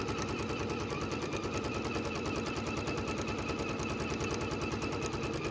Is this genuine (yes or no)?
no